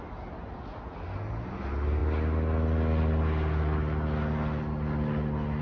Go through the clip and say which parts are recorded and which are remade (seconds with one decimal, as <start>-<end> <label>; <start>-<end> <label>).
0.0-5.6 recorded

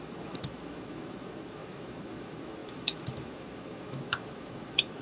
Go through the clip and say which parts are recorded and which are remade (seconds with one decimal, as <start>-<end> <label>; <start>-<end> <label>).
0.0-5.0 remade